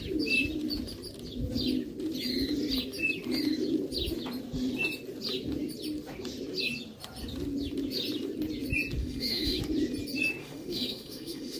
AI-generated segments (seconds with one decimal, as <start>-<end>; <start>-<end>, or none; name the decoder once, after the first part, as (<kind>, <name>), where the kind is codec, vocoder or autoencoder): 9.0-9.6 (autoencoder, DAC-VAE); 10.4-11.6